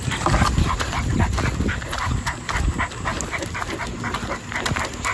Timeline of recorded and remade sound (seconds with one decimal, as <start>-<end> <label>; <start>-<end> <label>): 0.0-5.1 recorded